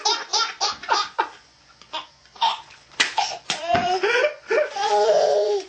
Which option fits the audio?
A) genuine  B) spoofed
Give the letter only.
B